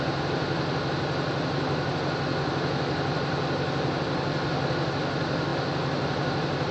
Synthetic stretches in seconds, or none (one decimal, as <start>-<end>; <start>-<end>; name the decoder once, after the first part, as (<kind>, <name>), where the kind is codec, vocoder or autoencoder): none